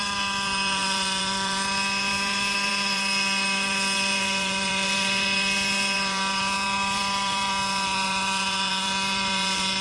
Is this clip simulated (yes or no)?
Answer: yes